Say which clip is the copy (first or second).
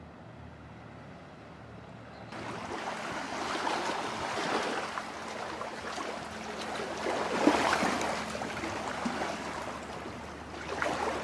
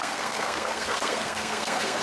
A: second